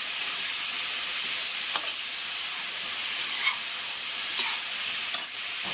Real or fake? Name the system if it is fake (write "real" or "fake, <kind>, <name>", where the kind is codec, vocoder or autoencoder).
real